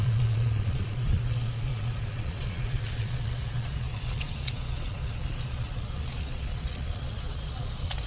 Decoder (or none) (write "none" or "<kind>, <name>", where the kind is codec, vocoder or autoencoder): vocoder, Vocos